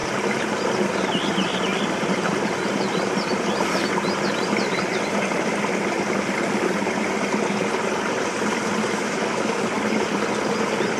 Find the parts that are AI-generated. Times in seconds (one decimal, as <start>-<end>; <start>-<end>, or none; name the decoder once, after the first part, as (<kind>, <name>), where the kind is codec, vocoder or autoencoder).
8.8-9.6 (autoencoder, DAC-VAE)